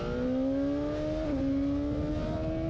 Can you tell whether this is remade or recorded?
recorded